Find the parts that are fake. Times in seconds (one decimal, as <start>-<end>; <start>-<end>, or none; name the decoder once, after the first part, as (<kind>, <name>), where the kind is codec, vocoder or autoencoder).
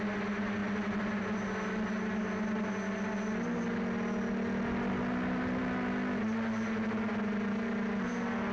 none